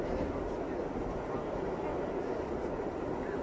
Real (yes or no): yes